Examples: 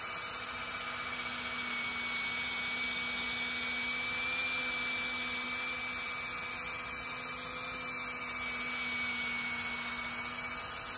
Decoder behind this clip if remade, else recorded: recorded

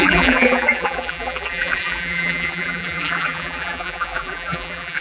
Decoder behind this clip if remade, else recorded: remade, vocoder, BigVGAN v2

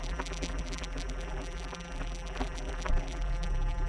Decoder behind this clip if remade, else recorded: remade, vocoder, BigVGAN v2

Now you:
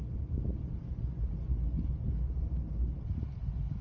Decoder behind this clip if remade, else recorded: recorded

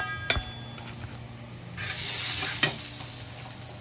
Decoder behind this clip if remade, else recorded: recorded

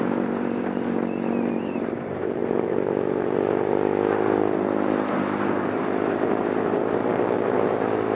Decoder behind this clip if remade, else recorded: remade, vocoder, BigVGAN v2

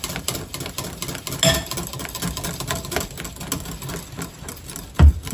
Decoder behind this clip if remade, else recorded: recorded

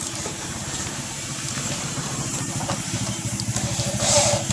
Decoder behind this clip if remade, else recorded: remade, vocoder, BigVGAN v2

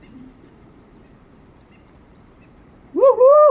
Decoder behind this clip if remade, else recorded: remade, vocoder, BigVGAN v2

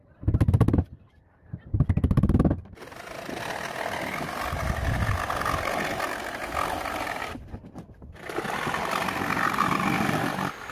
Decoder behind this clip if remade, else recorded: recorded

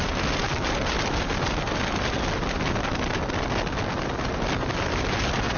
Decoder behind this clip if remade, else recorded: recorded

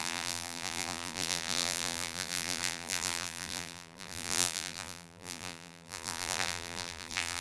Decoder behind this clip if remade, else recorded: remade, vocoder, BigVGAN v2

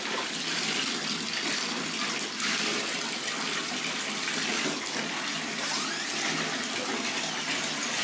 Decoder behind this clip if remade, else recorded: remade, vocoder, BigVGAN v2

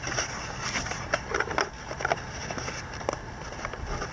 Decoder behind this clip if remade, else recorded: recorded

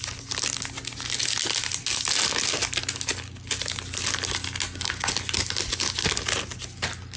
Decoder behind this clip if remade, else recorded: recorded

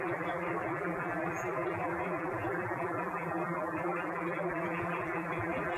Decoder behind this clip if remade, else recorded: remade, vocoder, BigVGAN v2